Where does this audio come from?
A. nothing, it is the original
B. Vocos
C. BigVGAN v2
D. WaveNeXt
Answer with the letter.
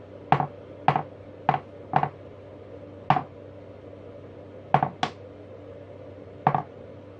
A